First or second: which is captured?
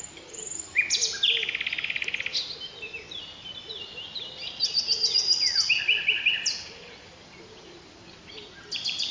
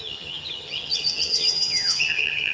first